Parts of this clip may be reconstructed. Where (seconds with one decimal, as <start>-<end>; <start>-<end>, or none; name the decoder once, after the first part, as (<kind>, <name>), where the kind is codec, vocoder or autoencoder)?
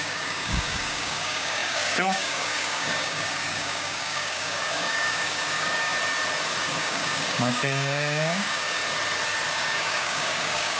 0.0-5.9 (codec, DAC); 6.6-8.8; 9.5-10.8